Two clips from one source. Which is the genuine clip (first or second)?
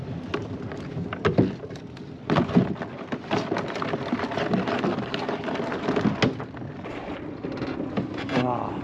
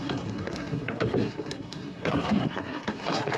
first